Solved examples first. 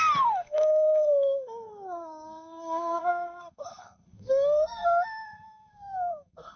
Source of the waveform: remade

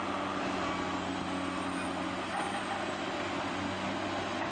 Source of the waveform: recorded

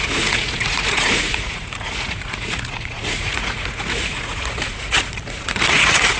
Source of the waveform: remade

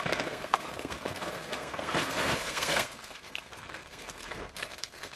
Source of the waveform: remade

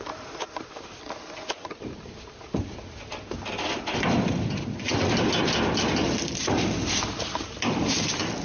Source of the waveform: recorded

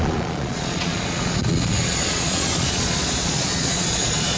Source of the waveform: remade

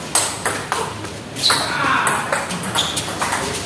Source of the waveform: recorded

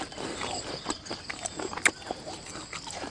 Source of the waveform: recorded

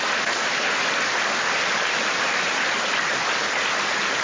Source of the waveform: recorded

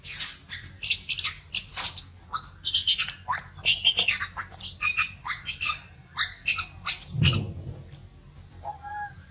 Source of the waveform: recorded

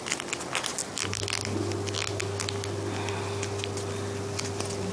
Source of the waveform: recorded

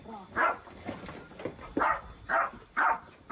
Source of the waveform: recorded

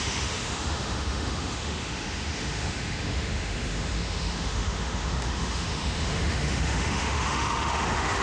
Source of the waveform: remade